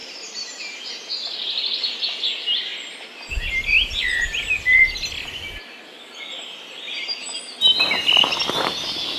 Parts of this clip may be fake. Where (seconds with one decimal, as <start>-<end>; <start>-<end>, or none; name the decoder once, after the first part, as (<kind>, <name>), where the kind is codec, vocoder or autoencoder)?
0.0-0.9 (vocoder, BigVGAN v2)